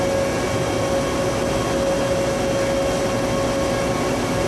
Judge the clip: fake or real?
real